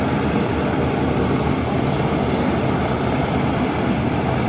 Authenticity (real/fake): real